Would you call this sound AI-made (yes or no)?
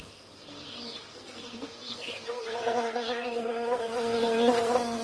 yes